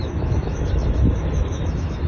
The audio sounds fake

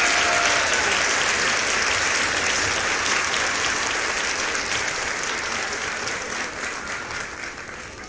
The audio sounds real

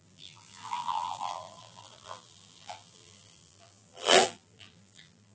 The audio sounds fake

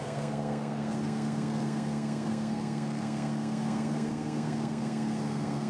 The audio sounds fake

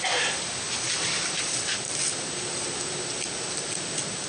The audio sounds real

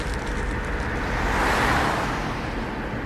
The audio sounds real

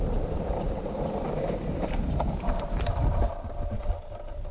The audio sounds fake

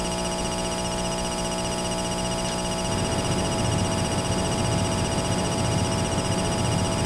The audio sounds real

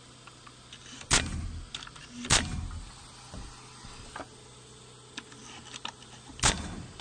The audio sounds real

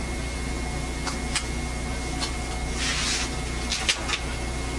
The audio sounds real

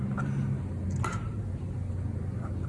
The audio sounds real